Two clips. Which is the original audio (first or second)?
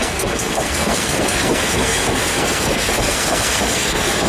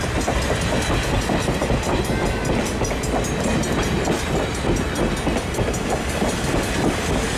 second